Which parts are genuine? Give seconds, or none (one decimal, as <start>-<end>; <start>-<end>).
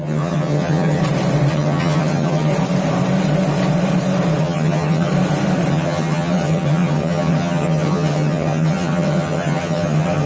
1.0-1.5; 2.5-4.4; 5.1-5.7